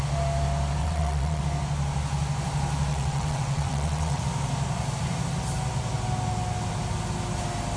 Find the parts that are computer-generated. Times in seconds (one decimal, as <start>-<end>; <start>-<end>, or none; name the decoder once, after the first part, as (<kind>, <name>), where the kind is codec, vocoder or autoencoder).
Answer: 0.8-1.4 (vocoder, WaveNeXt); 2.9-4.2